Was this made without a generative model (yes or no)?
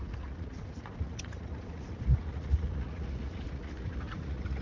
no